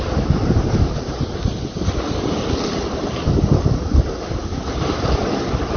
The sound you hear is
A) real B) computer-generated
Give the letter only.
A